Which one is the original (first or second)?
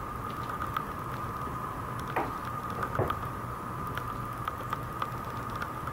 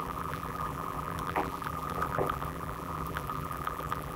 first